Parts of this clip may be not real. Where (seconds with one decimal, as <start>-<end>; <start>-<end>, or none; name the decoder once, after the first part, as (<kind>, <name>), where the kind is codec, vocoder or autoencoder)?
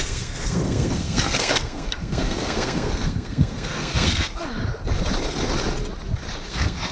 0.0-4.5 (codec, SNAC); 6.5-6.9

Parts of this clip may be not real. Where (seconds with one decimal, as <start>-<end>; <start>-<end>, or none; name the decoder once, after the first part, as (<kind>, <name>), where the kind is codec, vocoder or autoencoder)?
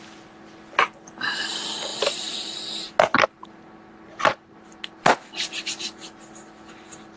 1.9-2.9 (vocoder, BigVGAN v2)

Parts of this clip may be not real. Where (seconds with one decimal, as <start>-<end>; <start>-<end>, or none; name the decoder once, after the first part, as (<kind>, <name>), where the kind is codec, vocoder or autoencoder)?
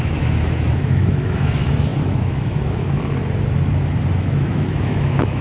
0.0-3.2 (autoencoder, DAC-VAE); 4.2-5.4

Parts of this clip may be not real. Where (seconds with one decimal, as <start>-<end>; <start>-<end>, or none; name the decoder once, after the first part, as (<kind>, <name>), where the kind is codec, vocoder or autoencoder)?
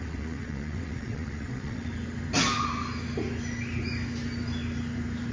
0.0-1.9 (vocoder, WaveNeXt)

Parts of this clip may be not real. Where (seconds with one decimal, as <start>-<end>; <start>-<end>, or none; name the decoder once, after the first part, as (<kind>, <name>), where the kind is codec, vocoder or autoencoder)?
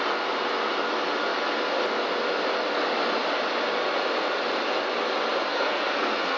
5.5-6.4 (codec, SNAC)